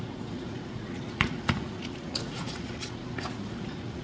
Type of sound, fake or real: fake